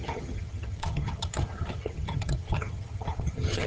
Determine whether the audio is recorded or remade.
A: remade